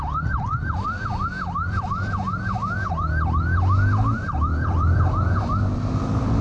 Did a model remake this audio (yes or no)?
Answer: yes